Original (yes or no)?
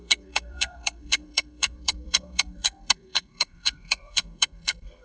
no